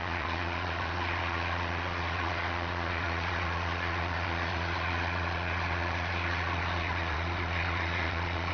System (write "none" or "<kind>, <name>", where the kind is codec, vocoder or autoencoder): vocoder, Vocos